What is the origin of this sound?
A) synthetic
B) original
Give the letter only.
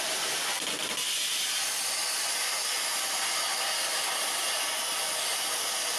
B